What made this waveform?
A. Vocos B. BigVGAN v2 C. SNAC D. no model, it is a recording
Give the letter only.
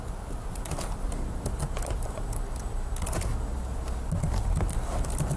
D